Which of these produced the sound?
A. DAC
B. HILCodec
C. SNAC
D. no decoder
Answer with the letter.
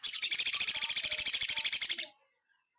D